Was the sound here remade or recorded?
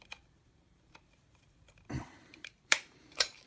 remade